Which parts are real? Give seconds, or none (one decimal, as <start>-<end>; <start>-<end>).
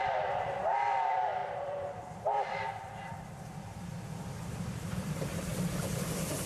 none